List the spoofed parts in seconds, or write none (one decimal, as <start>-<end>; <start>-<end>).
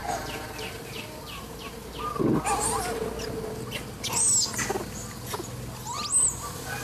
0.0-1.6